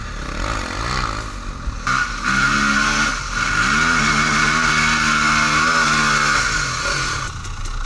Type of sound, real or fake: real